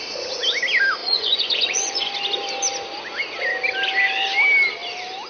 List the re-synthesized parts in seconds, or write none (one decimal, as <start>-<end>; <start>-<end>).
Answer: 1.0-2.1